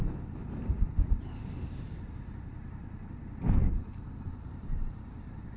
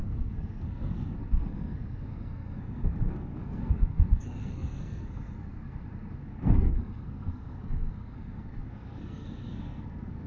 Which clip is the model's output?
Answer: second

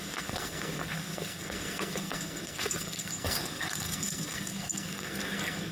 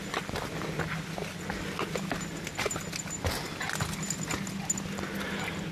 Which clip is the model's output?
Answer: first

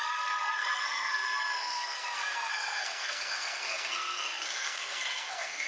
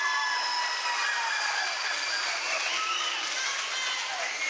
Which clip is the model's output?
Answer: first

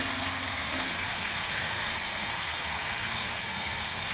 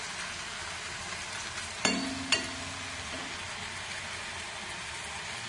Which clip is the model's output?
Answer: first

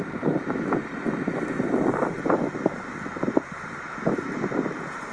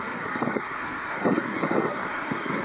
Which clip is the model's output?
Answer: second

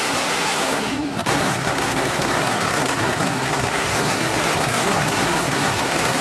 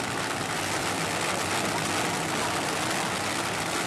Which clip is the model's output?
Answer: first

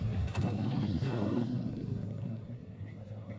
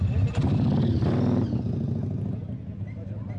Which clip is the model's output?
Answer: first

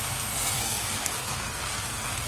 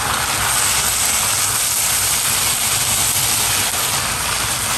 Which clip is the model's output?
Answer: first